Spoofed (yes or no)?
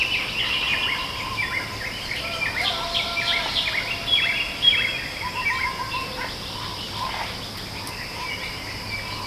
no